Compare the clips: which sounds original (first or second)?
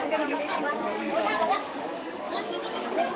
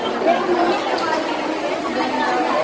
second